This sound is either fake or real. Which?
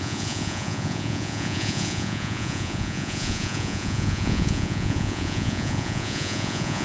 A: fake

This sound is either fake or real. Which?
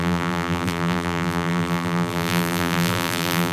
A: fake